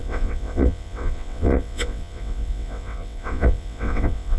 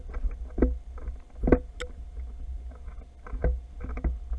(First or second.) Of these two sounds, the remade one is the first